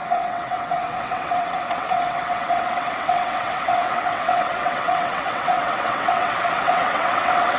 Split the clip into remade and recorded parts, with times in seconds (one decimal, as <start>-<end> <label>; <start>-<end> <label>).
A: 0.0-7.6 remade